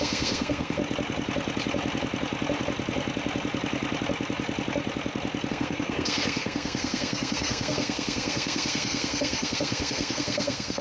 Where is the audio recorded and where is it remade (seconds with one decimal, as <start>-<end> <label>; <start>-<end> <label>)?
0.0-0.8 remade; 0.8-5.5 recorded; 5.5-10.8 remade